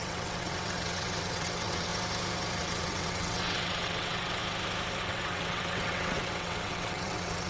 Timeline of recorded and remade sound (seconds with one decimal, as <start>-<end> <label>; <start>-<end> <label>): 0.0-1.9 remade; 1.9-2.6 recorded; 2.6-4.4 remade; 4.4-5.0 recorded; 5.0-7.5 remade